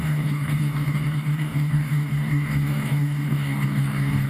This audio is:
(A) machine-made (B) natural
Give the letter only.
A